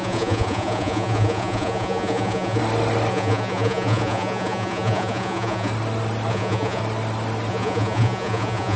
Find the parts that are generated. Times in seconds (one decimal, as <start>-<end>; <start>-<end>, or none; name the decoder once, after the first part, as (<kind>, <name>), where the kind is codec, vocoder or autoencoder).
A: 0.0-2.6 (vocoder, Vocos); 3.1-5.7; 6.3-6.8; 7.5-8.8